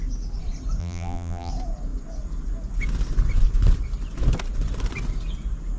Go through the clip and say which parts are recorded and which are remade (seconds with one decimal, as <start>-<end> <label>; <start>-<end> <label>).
0.0-0.8 recorded; 0.8-1.5 remade; 1.5-5.8 recorded